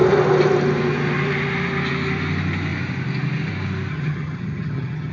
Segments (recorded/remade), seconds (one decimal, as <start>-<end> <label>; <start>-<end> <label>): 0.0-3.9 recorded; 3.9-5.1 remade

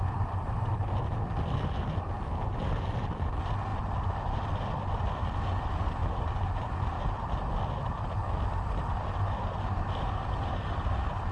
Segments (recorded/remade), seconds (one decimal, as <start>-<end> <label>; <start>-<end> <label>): 0.0-6.0 recorded; 6.0-6.5 remade; 6.5-11.3 recorded

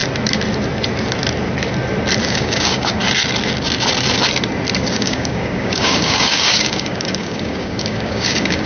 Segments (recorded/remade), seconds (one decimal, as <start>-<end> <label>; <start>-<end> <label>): 0.0-2.2 recorded; 2.2-3.0 remade; 3.0-4.9 recorded; 4.9-8.7 remade

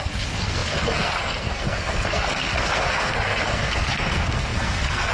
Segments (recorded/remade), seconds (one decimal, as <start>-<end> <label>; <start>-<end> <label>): 0.0-5.1 remade

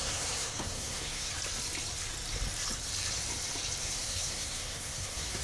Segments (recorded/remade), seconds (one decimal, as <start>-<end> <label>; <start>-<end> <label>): 0.0-1.3 remade; 1.3-3.8 recorded; 3.8-5.4 remade

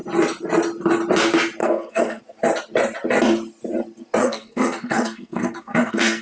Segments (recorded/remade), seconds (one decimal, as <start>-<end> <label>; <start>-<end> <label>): 0.0-1.6 recorded; 1.6-2.2 remade; 2.2-4.2 recorded; 4.2-6.2 remade